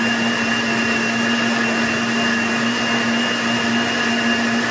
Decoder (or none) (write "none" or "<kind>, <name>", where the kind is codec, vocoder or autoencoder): none